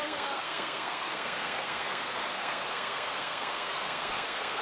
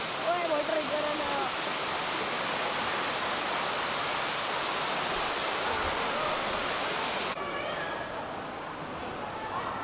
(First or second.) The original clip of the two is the second